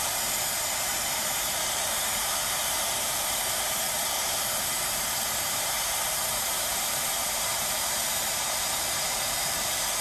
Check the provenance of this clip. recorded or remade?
remade